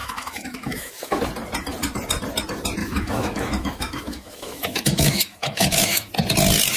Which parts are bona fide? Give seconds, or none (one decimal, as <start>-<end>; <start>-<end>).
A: 1.2-2.8; 6.1-6.8

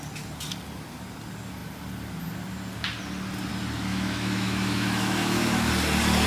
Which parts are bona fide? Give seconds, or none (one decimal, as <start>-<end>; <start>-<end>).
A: 0.0-3.9; 5.7-6.3

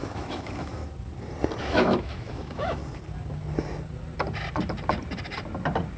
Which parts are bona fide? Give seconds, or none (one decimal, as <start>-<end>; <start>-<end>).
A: 0.8-1.6; 2.8-6.0

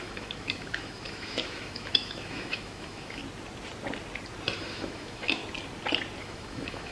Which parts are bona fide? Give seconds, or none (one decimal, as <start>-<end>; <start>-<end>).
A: 3.2-4.6; 5.4-6.2

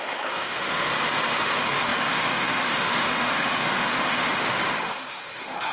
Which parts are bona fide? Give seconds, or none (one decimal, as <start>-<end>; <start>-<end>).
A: 0.9-1.4

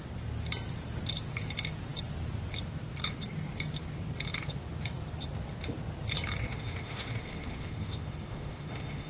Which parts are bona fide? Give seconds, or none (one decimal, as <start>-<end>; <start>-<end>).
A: 0.0-6.5

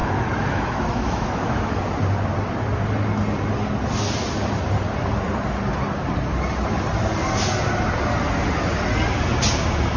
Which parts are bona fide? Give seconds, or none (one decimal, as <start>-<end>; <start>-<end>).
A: 1.8-10.0